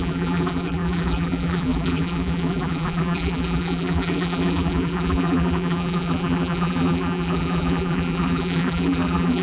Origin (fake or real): fake